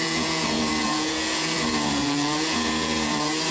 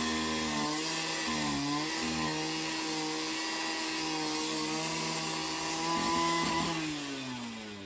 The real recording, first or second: second